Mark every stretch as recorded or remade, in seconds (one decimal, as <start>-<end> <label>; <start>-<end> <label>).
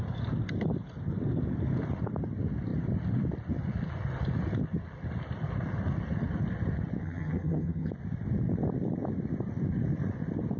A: 0.0-7.0 recorded; 7.0-7.9 remade; 7.9-10.6 recorded